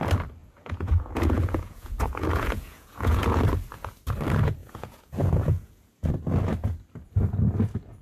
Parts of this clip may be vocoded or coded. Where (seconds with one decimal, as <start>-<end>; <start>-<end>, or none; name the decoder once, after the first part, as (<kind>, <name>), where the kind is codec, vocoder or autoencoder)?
0.4-3.4 (vocoder, Vocos); 4.6-6.1